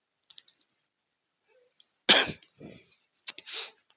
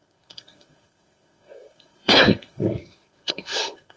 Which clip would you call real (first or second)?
first